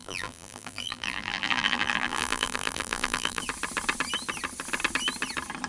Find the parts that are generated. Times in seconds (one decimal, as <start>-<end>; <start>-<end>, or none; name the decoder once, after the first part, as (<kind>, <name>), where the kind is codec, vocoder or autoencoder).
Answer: 0.0-3.4 (vocoder, BigVGAN v2)